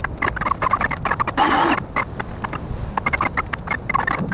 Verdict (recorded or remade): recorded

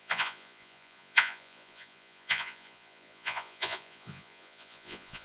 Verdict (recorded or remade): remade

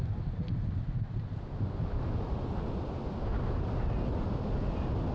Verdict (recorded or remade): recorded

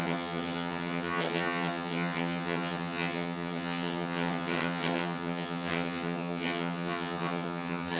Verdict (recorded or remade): remade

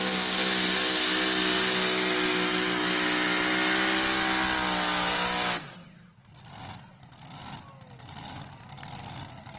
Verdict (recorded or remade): recorded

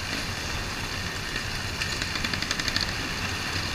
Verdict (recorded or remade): recorded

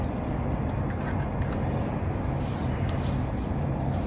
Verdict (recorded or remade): recorded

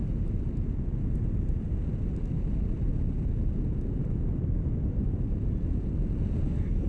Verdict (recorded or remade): recorded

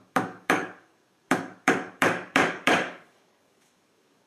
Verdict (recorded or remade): remade